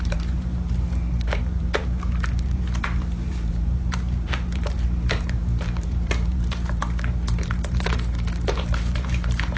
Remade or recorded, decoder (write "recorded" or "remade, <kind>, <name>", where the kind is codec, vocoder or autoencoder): remade, vocoder, BigVGAN v2